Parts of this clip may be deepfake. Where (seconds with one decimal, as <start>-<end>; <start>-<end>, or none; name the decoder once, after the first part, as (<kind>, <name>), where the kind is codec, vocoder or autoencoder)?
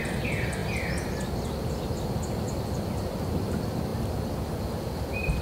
none